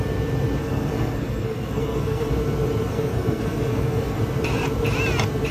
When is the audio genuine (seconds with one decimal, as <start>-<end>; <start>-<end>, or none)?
0.0-0.6; 2.3-2.9; 4.2-5.5